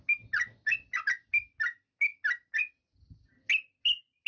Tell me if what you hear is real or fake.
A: real